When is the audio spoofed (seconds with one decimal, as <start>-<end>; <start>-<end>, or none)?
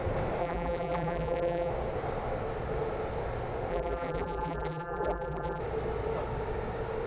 0.4-1.7; 3.7-5.6